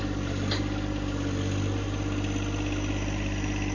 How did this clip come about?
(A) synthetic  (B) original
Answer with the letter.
B